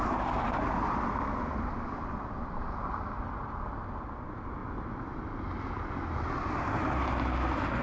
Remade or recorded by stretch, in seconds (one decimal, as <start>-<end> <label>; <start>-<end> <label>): 0.0-7.8 recorded